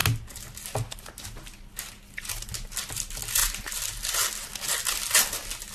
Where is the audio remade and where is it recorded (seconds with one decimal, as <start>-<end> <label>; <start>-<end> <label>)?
0.0-5.7 recorded